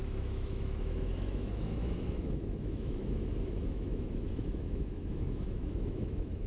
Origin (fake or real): fake